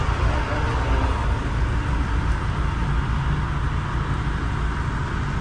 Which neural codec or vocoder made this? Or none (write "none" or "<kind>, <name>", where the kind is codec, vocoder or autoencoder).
none